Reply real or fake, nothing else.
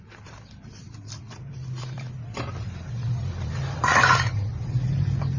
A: fake